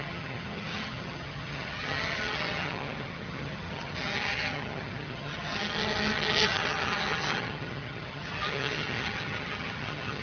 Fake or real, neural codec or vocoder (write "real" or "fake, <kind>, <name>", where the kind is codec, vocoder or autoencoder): fake, vocoder, HiFi-GAN